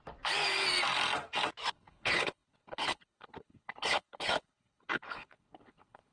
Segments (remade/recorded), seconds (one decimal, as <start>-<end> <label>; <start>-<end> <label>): 0.0-1.7 recorded; 1.7-6.1 remade